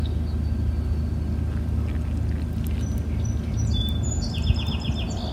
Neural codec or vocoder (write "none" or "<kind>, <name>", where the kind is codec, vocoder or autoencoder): none